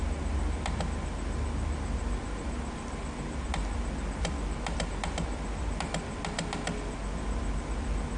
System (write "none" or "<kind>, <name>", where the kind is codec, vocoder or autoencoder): none